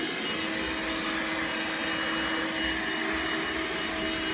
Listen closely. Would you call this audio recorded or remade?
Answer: recorded